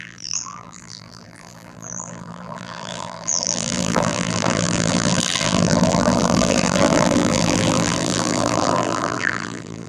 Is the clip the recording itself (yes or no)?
no